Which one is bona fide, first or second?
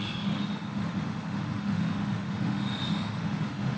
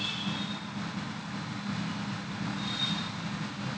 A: second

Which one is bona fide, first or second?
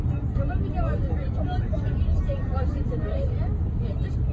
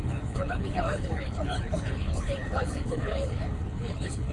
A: first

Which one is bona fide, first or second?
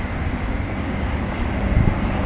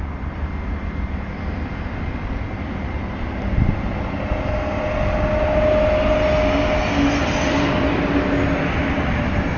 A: second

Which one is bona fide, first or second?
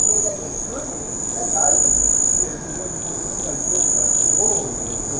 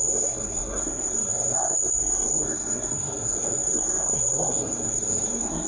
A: first